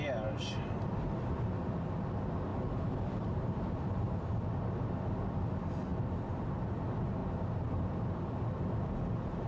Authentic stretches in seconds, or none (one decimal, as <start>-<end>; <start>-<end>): 0.0-2.5; 4.3-9.5